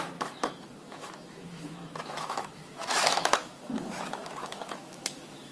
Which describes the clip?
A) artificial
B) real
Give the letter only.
A